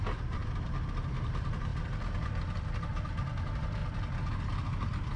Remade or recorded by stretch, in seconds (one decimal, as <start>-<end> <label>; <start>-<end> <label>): 0.0-0.4 remade; 0.4-1.1 recorded; 1.1-1.7 remade; 1.7-3.4 recorded; 3.4-3.8 remade; 3.8-5.2 recorded

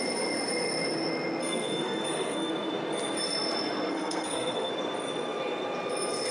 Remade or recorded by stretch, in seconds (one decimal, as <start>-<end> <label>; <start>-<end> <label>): 0.0-1.4 recorded; 1.4-2.5 remade; 2.5-3.9 recorded; 3.9-4.7 remade; 4.7-6.3 recorded